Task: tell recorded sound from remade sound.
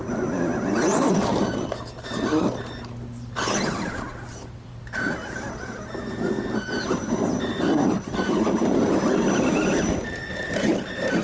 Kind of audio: recorded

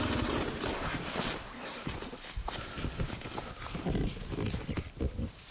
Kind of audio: recorded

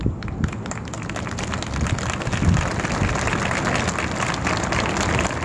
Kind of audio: recorded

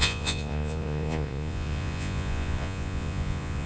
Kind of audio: remade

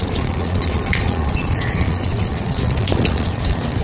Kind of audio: remade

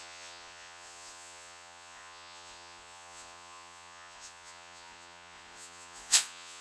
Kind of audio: remade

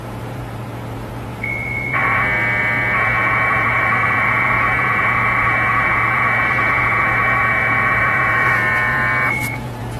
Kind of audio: remade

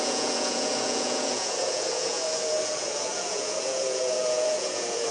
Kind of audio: remade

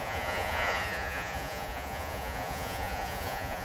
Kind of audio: remade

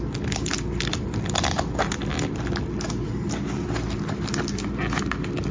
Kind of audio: recorded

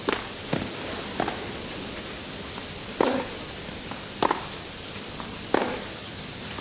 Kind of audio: recorded